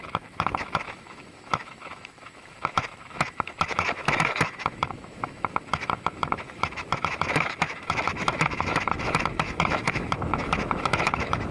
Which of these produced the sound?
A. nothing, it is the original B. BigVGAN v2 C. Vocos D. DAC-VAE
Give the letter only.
D